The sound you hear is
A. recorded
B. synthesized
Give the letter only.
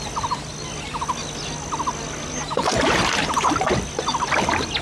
A